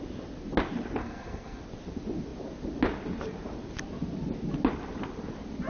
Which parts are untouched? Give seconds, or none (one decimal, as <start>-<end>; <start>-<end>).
0.0-1.0; 1.6-5.7